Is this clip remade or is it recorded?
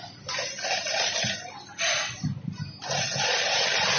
recorded